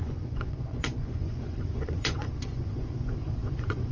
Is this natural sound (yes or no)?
no